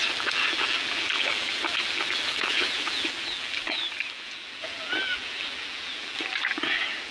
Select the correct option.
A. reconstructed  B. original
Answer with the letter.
A